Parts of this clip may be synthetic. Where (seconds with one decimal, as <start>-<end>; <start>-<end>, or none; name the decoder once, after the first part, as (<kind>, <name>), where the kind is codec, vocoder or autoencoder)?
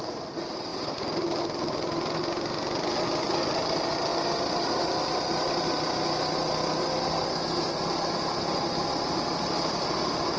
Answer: none